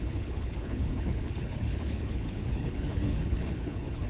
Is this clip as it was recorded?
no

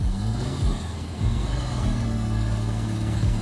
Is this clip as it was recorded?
no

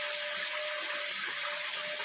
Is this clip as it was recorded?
yes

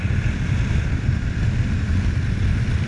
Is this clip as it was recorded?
no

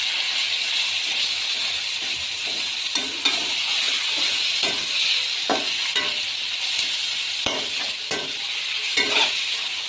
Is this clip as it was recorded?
yes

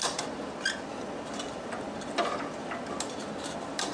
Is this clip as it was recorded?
yes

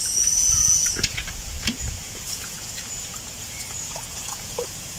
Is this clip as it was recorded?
no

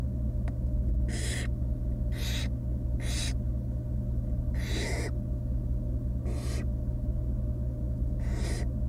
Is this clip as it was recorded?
yes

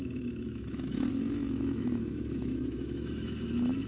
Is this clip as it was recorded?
no